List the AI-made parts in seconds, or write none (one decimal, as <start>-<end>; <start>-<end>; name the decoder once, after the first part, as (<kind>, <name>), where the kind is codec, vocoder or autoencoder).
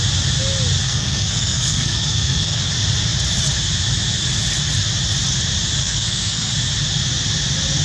0.8-2.7 (codec, SNAC); 5.8-6.5